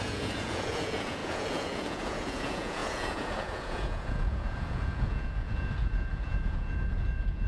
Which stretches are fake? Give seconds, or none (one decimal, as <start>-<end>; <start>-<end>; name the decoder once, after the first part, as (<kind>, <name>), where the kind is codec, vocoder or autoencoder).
0.0-7.5 (vocoder, Vocos)